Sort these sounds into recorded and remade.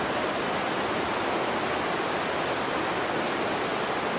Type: recorded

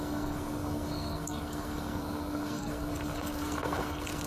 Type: remade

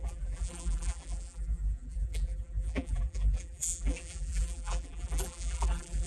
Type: remade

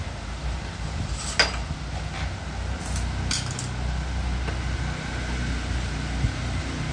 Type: recorded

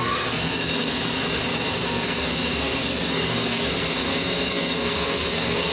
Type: remade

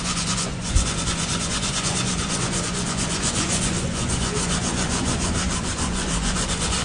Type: remade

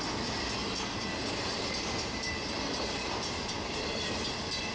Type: recorded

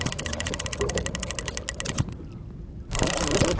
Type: recorded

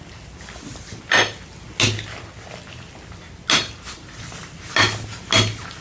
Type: recorded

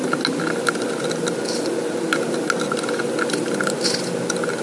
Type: recorded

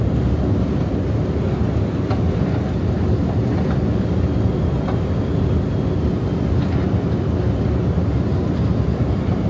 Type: recorded